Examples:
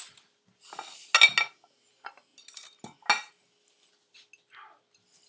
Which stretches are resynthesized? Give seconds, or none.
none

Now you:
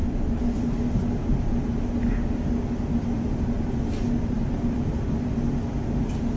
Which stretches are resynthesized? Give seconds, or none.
none

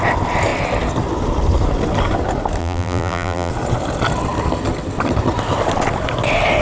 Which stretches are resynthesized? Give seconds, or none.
2.6-3.5

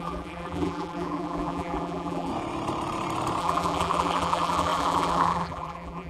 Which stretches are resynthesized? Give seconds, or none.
0.0-2.3; 3.4-6.1

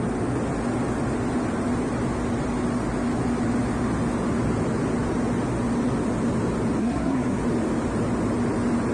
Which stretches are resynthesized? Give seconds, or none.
6.8-7.4

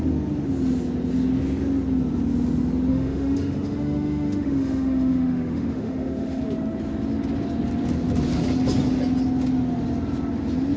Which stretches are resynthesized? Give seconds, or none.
2.9-6.4